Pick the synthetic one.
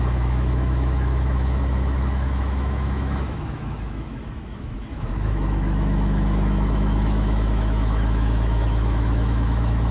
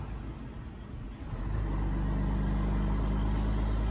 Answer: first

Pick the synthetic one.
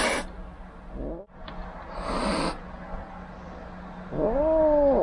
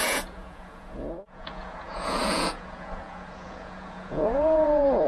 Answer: second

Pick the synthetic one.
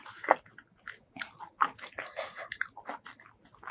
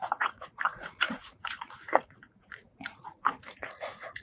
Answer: second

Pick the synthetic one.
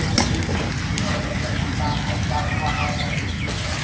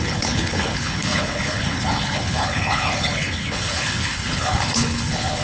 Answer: second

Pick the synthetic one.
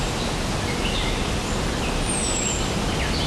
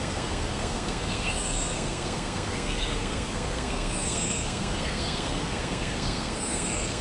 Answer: second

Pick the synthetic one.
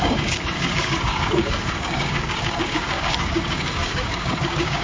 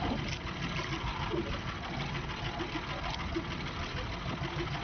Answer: first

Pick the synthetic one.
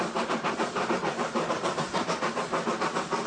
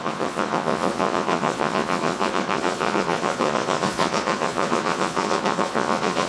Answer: second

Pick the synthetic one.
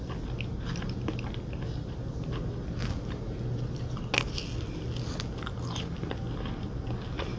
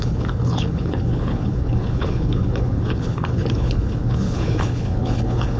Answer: second